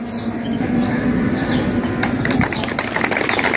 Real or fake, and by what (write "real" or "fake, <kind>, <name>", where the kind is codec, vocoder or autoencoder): real